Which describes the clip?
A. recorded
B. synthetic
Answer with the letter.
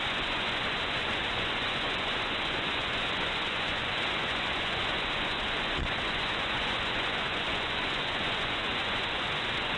B